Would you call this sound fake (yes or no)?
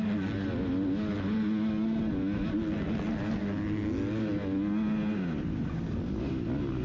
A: no